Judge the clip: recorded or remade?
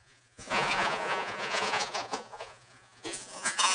remade